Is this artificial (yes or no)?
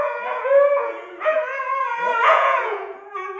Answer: yes